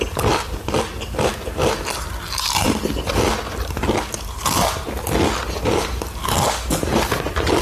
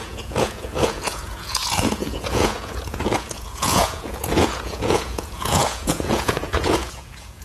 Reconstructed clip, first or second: second